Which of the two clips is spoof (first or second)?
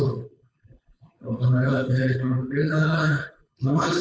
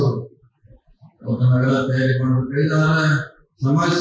first